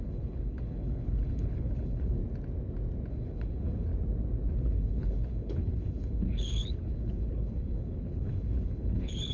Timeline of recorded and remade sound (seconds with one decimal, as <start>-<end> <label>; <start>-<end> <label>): 0.0-2.2 remade; 2.2-3.1 recorded; 3.1-3.9 remade; 3.9-4.5 recorded; 4.5-9.3 remade